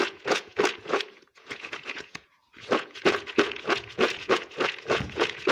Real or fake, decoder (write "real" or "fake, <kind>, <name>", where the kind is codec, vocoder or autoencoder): fake, vocoder, Vocos